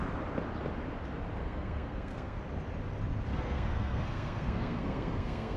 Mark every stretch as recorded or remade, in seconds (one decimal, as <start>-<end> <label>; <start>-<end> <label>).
0.0-1.4 recorded; 1.4-2.4 remade; 2.4-3.3 recorded; 3.3-5.6 remade